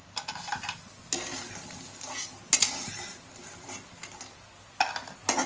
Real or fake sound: real